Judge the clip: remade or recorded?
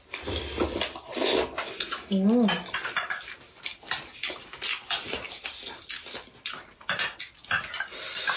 recorded